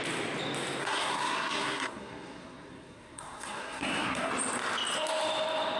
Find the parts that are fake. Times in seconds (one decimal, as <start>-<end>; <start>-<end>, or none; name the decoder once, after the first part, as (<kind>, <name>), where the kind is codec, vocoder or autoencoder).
0.8-4.3 (codec, SNAC)